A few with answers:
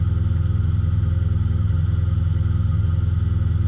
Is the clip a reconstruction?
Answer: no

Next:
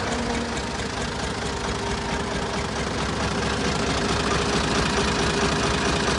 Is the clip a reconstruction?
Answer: no